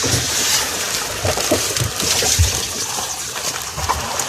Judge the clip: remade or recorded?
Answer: recorded